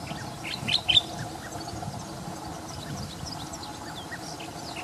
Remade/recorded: recorded